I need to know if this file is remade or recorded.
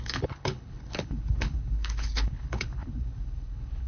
remade